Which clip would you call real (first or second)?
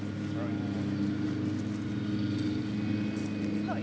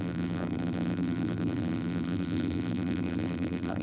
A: first